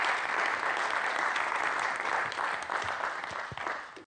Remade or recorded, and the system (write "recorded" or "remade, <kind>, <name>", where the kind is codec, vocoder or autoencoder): recorded